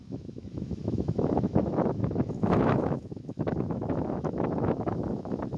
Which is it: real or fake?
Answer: fake